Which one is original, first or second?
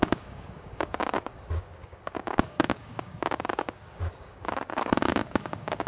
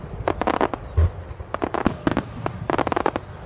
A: second